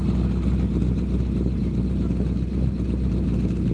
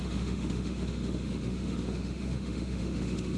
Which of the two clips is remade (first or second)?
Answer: second